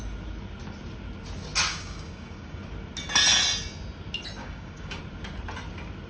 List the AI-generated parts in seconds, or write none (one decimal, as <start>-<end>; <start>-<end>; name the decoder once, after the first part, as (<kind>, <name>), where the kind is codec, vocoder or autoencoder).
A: 1.7-2.6 (codec, DAC); 4.4-5.0